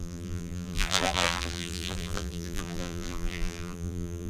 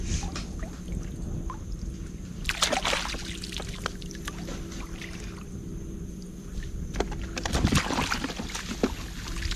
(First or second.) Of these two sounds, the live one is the second